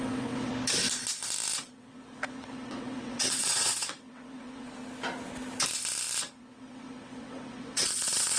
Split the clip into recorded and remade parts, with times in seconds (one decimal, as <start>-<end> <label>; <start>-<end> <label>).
0.0-0.5 remade; 0.5-1.6 recorded; 1.6-4.8 remade; 4.8-6.3 recorded; 6.3-8.4 remade